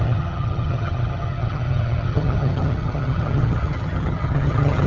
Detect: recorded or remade remade